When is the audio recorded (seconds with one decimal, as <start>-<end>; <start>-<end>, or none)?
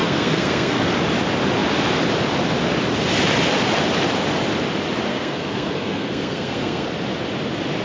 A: 0.9-5.1; 6.9-7.8